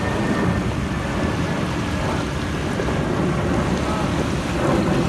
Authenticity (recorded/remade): recorded